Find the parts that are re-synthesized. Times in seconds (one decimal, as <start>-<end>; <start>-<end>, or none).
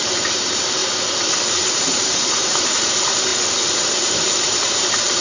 0.0-0.8; 1.7-3.3; 3.8-5.2